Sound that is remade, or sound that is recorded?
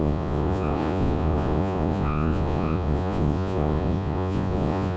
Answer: remade